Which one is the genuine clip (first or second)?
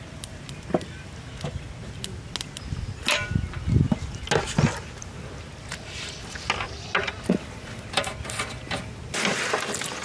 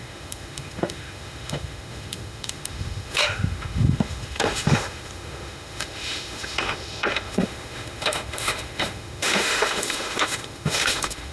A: first